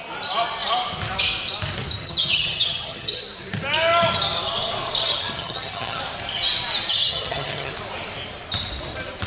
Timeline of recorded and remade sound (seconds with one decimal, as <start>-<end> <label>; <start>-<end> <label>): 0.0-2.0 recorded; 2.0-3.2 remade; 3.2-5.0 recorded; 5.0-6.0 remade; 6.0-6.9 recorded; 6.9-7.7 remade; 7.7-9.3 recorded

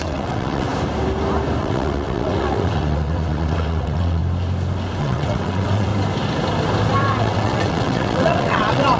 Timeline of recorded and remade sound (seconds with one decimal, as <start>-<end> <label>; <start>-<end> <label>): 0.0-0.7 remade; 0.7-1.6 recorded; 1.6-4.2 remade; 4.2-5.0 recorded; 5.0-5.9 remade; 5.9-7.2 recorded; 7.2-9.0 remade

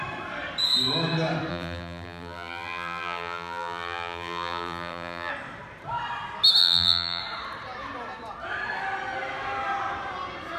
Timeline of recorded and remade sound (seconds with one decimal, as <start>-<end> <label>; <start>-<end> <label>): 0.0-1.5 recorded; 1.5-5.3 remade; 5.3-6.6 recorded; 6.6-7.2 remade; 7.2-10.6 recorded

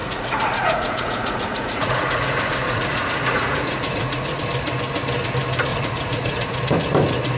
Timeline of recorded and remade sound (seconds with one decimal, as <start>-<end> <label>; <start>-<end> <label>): 0.0-4.4 remade; 4.4-5.7 recorded; 5.7-6.6 remade; 6.6-7.4 recorded

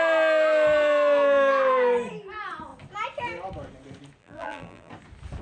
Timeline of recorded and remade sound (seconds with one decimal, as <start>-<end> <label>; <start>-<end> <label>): 0.0-4.2 recorded; 4.2-4.9 remade; 4.9-5.4 recorded